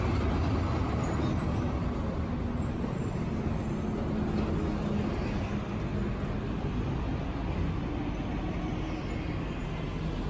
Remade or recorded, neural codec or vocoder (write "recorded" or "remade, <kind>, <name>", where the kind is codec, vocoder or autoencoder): recorded